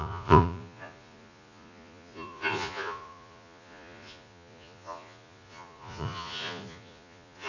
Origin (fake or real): fake